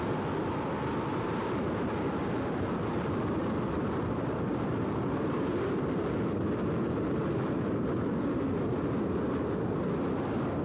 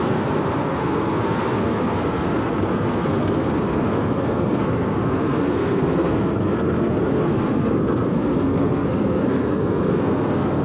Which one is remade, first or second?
second